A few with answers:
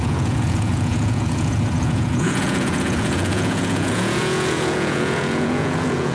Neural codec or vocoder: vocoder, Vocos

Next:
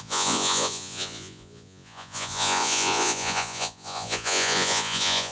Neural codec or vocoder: vocoder, Vocos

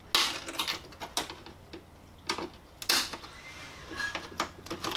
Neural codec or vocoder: none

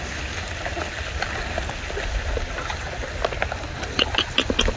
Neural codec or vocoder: none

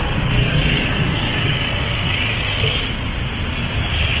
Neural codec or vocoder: none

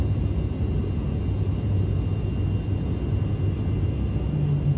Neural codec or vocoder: none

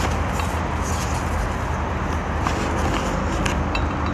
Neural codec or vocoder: none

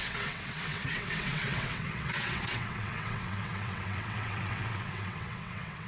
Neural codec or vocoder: vocoder, WaveNeXt